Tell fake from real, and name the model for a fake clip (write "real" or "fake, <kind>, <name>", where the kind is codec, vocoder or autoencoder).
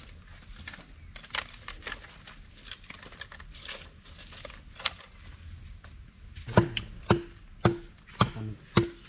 real